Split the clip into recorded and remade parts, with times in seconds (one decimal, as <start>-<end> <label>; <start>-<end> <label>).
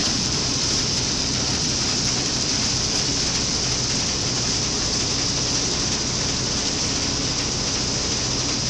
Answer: 0.0-3.1 remade; 3.1-6.6 recorded; 6.6-7.3 remade; 7.3-8.7 recorded